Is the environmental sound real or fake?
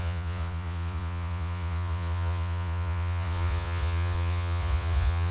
fake